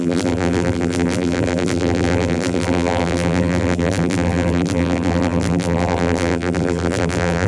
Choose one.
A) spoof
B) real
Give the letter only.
A